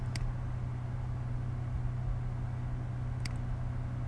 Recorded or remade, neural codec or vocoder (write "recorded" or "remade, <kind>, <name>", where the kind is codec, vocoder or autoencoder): recorded